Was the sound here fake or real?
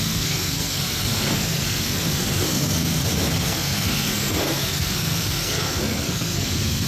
fake